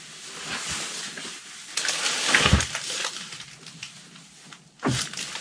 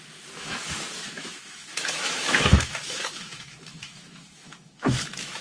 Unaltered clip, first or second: first